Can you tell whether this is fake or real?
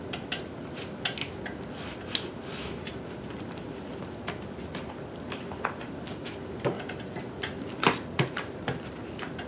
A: real